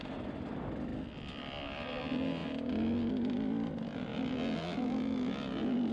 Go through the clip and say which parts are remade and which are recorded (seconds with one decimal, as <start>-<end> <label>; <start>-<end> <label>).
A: 0.0-5.9 recorded